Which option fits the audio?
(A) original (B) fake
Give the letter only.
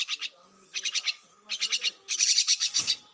A